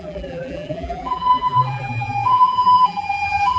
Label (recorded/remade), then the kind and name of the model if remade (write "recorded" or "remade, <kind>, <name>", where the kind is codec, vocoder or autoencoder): remade, vocoder, BigVGAN v2